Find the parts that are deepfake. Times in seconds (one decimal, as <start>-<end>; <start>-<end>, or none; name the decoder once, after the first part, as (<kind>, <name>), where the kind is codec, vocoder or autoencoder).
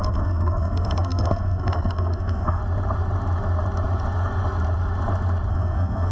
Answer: 0.0-2.6 (codec, SNAC); 5.5-6.1